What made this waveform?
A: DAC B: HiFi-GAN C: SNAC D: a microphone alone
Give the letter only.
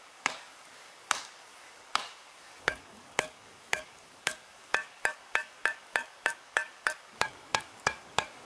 A